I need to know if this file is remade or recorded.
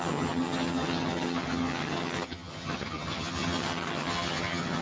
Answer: remade